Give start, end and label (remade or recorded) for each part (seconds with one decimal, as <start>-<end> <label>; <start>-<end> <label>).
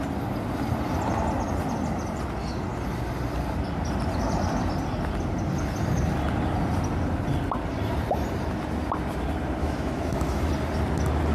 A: 0.0-9.6 recorded; 9.6-10.5 remade; 10.5-11.3 recorded